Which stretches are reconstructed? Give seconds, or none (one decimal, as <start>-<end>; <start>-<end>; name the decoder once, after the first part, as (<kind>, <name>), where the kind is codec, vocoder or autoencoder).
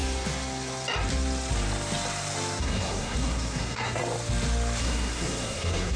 2.6-4.0 (codec, SNAC); 4.8-6.0